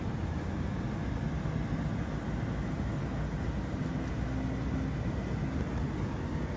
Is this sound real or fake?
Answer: real